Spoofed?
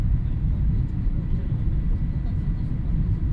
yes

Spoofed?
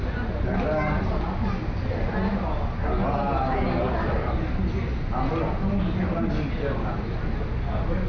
no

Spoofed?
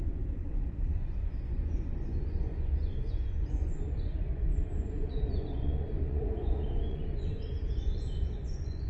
yes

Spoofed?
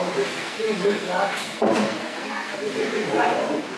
yes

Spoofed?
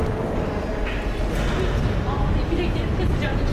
no